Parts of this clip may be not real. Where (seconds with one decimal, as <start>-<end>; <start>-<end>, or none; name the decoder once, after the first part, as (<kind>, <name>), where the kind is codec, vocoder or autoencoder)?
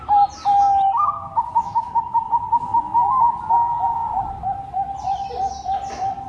1.6-2.3 (autoencoder, DAC-VAE); 2.7-3.2